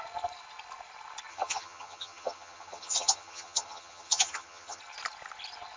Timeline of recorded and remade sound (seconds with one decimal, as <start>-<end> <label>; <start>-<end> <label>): 0.0-1.3 recorded; 1.3-4.8 remade; 4.8-5.8 recorded